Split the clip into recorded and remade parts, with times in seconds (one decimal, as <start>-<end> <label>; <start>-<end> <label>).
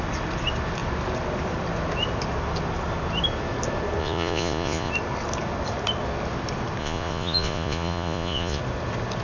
0.0-4.0 recorded; 4.0-4.9 remade; 4.9-6.8 recorded; 6.8-8.6 remade; 8.6-9.2 recorded